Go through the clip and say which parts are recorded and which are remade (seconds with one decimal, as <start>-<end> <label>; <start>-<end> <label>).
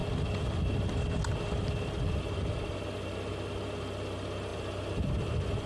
0.0-5.7 recorded